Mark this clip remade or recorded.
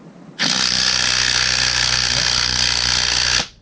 recorded